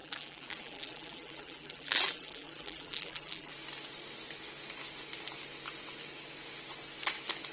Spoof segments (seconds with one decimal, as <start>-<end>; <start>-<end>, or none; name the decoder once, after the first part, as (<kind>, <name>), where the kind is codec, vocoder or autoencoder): 0.0-3.5 (vocoder, BigVGAN v2)